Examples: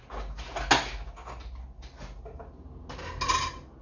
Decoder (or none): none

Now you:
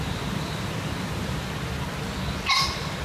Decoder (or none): none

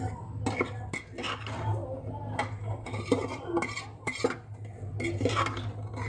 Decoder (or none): none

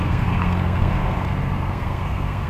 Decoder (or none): codec, SNAC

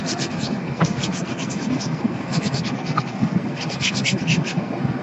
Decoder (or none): codec, SNAC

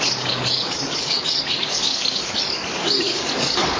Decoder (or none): codec, DAC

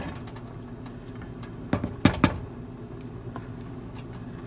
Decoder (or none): none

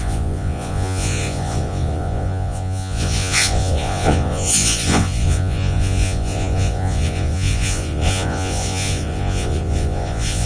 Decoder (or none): vocoder, Vocos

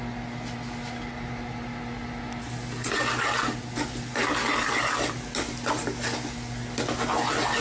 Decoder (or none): none